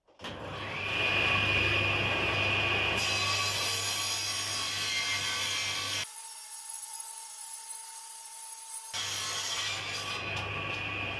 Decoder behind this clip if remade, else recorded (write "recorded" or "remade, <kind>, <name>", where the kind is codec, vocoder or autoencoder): recorded